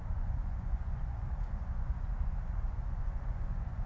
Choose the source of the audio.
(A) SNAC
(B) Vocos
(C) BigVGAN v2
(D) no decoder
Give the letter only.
B